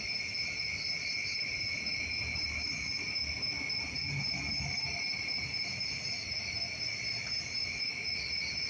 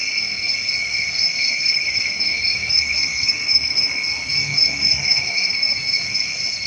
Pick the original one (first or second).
first